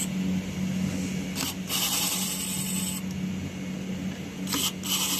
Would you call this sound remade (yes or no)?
no